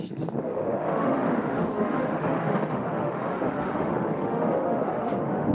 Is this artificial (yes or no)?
yes